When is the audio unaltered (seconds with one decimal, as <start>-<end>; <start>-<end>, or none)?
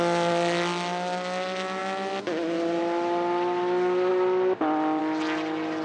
0.0-5.8